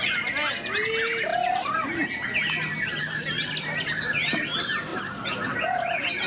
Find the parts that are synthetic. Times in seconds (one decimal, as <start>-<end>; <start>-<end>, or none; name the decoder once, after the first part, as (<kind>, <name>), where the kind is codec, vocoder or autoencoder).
none